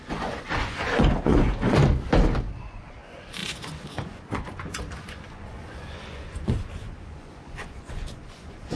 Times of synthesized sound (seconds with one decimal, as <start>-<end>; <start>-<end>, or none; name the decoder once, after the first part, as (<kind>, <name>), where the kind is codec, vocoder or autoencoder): 0.0-1.8 (vocoder, Vocos); 2.6-8.8